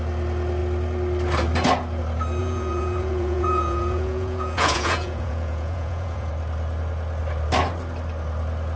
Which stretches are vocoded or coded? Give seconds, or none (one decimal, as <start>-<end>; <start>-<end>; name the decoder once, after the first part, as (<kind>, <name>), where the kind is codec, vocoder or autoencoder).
2.4-6.3 (vocoder, Vocos)